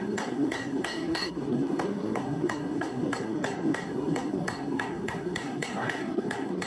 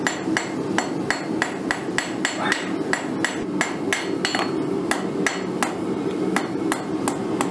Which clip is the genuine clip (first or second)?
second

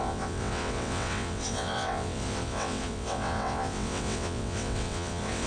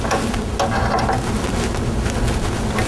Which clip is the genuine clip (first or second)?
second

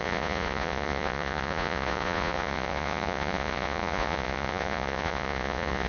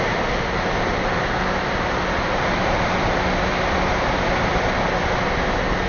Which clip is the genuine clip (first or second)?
second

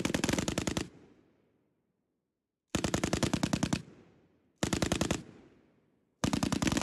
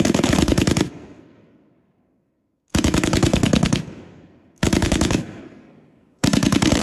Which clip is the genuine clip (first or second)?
first